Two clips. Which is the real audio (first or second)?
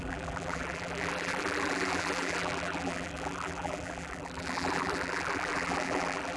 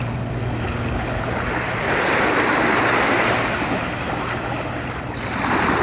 second